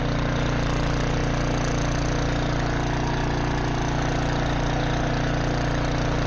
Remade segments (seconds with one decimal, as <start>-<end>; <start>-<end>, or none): none